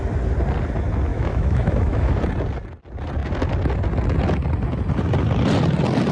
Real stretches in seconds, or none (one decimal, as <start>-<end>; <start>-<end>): 0.0-1.1; 2.1-6.1